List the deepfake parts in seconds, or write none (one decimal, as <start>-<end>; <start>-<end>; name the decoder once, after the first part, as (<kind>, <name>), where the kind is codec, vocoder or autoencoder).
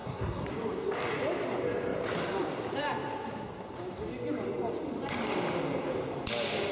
0.0-0.5 (codec, SNAC)